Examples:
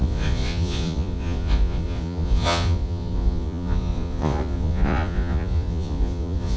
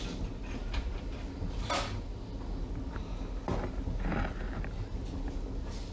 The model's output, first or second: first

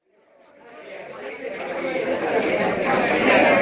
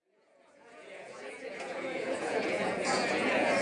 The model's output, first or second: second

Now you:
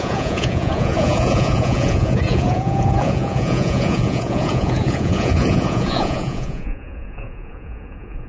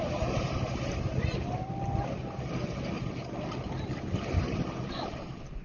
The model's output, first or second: first